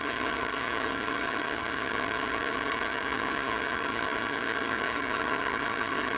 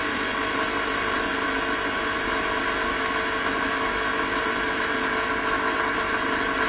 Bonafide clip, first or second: second